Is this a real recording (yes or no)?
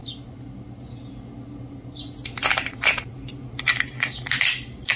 yes